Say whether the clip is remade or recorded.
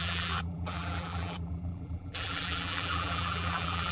remade